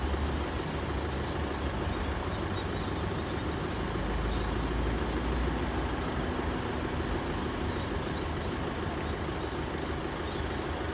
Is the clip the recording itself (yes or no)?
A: yes